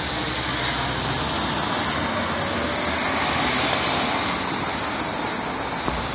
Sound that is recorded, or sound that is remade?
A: recorded